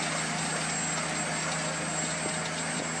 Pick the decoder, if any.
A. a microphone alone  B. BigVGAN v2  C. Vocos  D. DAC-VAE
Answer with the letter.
A